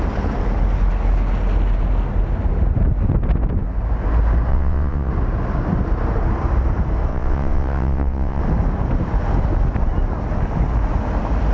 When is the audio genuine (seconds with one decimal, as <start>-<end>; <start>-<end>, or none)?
0.0-4.5; 5.1-7.1; 8.4-11.5

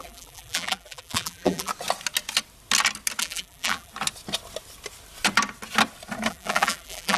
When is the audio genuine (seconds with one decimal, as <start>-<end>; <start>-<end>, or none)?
1.7-3.2; 3.9-6.3

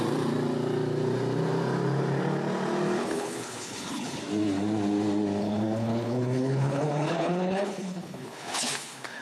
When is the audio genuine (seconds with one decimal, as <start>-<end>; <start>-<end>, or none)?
0.0-3.0; 4.2-5.4

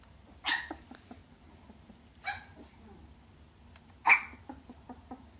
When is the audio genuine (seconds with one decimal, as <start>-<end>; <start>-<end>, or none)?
0.0-5.4